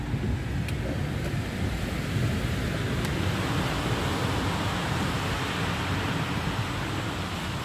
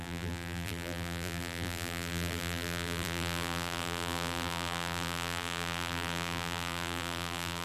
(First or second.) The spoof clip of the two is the second